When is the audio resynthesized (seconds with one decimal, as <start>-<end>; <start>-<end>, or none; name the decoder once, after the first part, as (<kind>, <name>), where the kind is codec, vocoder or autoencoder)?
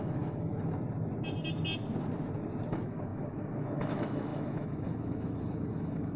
0.0-0.5 (autoencoder, DAC-VAE); 2.7-6.2